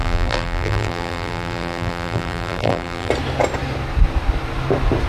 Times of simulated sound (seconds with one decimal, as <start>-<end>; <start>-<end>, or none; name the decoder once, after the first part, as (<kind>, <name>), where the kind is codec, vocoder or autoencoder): 0.0-3.1 (vocoder, BigVGAN v2)